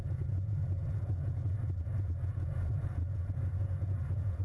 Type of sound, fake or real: fake